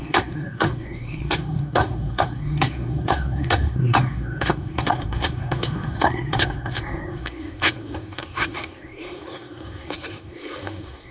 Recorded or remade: remade